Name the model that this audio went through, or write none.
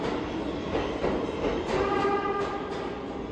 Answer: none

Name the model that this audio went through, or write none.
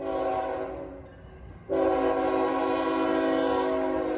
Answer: none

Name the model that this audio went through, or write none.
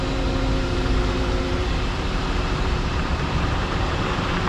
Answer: vocoder, BigVGAN v2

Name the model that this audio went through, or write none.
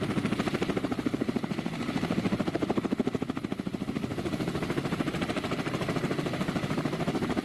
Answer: vocoder, BigVGAN v2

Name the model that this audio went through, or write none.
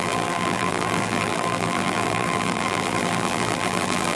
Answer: vocoder, BigVGAN v2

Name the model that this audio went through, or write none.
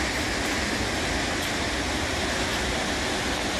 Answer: none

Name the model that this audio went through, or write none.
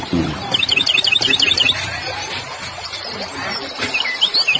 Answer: vocoder, BigVGAN v2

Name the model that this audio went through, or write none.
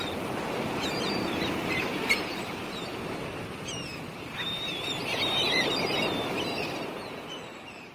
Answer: vocoder, BigVGAN v2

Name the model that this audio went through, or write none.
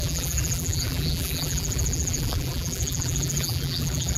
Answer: vocoder, BigVGAN v2